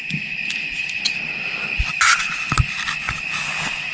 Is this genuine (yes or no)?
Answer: yes